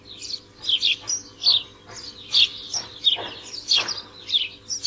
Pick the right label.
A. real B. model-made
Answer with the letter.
A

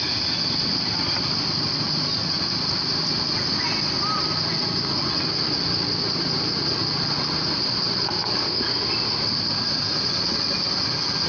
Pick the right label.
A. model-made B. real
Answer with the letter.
B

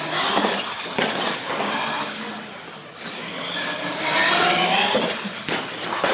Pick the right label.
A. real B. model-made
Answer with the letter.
A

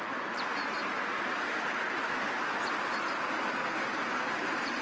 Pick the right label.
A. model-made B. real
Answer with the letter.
B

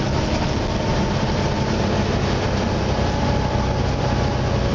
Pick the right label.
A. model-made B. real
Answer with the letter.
B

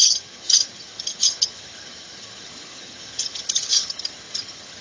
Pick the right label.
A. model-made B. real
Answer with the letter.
A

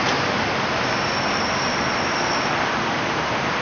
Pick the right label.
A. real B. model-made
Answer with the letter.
A